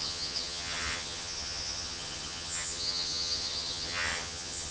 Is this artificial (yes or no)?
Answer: yes